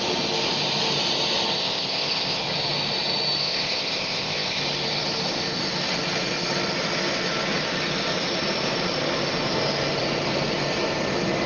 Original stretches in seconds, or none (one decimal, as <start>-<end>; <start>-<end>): 0.0-1.6; 2.4-3.4; 4.6-11.5